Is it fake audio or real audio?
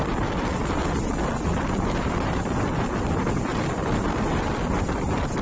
real